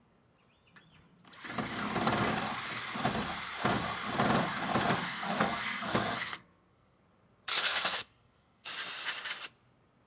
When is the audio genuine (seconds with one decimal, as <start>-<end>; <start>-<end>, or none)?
0.0-4.9; 7.0-7.5; 8.7-10.1